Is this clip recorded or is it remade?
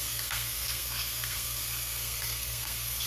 remade